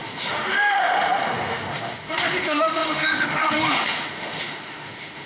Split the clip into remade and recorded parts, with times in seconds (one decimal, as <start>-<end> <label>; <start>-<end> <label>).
0.0-5.3 remade